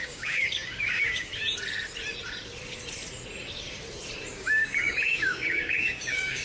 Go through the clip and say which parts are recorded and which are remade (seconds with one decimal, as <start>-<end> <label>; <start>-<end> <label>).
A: 0.0-1.3 remade; 1.3-4.3 recorded; 4.3-6.4 remade